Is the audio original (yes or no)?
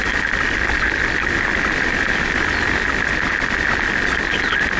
yes